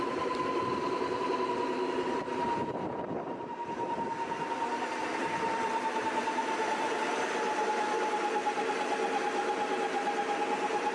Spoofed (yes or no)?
yes